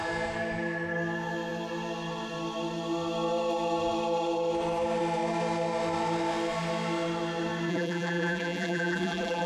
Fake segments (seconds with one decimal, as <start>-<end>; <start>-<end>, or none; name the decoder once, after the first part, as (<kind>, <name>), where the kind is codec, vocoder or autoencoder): 7.7-9.5 (vocoder, BigVGAN v2)